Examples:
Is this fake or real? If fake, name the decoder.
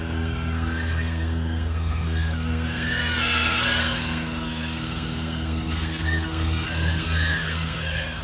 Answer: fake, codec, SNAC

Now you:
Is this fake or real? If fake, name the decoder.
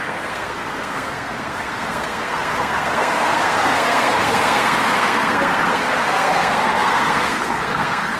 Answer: fake, codec, SNAC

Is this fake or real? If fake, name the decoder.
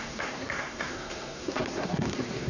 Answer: fake, codec, SNAC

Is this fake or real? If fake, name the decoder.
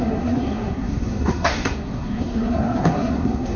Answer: fake, codec, SNAC